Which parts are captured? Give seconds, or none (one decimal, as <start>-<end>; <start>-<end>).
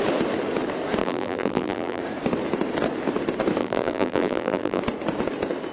0.0-1.0; 2.0-3.6; 4.8-5.7